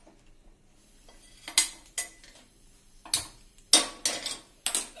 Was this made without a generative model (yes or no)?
yes